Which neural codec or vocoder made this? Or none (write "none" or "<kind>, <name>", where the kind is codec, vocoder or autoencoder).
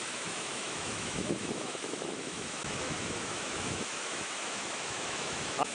autoencoder, DAC-VAE